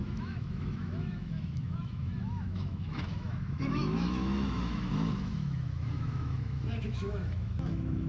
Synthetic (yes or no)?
yes